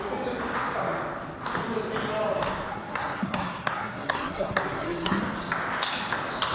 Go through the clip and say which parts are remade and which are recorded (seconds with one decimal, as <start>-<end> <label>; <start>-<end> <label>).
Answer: 0.0-2.7 recorded; 2.7-5.2 remade; 5.2-6.5 recorded